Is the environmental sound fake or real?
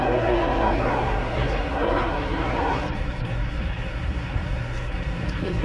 fake